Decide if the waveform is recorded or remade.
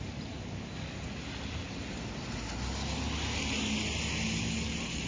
recorded